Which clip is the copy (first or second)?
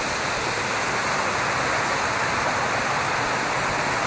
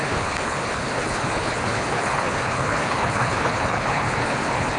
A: second